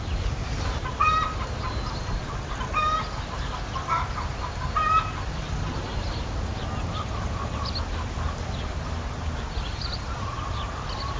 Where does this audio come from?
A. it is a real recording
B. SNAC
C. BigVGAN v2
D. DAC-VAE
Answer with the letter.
A